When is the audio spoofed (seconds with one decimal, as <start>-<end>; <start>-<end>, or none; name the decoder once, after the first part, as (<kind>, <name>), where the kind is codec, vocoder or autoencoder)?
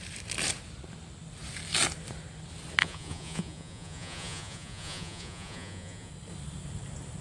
2.8-6.1 (vocoder, Vocos)